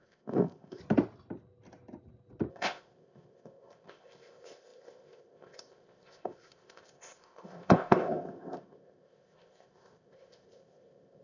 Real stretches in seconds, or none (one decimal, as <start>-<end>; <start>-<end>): 0.8-2.5